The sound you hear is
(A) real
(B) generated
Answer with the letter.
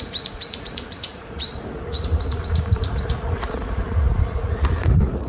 B